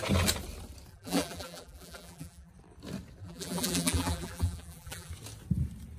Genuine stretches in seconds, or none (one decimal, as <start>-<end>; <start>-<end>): 0.0-0.9; 2.5-3.2; 5.1-6.0